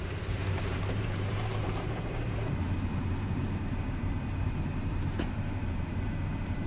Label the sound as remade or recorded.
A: remade